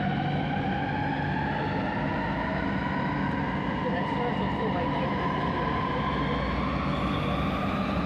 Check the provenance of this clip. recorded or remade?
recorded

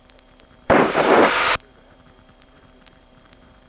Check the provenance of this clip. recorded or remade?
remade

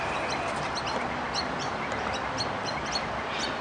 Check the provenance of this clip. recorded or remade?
recorded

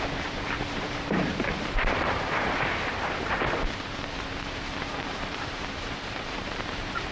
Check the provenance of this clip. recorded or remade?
remade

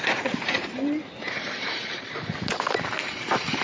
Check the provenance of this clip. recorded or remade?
remade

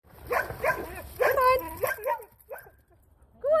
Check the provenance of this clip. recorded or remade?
recorded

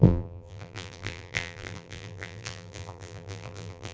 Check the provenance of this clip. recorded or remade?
remade